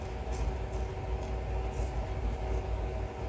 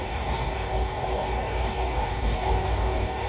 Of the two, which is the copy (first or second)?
second